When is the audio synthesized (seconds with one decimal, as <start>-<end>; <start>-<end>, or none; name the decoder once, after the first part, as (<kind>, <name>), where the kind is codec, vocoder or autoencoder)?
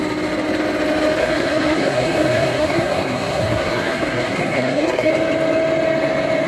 1.2-5.1 (codec, SNAC)